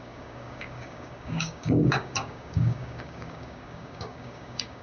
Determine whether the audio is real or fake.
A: fake